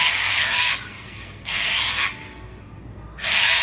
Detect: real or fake fake